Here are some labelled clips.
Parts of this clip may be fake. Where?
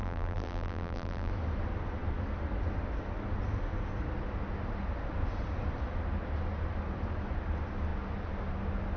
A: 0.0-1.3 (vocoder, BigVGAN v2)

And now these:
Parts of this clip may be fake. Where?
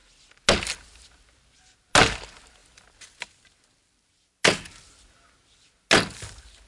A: none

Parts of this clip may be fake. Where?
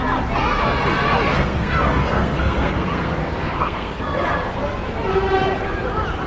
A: 1.3-4.0 (codec, SNAC)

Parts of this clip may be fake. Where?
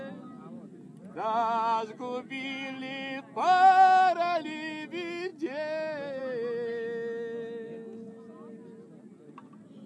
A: none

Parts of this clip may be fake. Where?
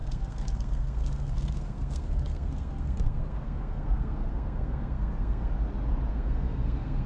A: 0.0-5.5 (codec, SNAC); 6.1-7.1